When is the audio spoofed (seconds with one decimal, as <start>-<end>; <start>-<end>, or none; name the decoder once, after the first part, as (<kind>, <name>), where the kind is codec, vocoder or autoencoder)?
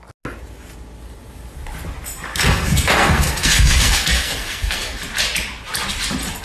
2.3-5.0 (codec, SNAC)